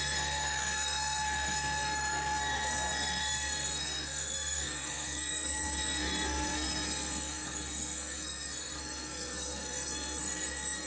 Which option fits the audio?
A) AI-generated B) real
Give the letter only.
A